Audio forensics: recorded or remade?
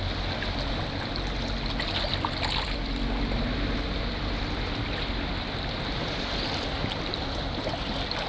recorded